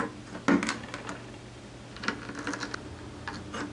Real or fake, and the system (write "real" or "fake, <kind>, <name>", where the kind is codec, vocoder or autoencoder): real